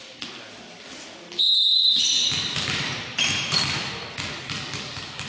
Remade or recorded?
recorded